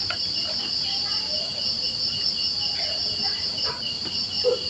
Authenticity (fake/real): real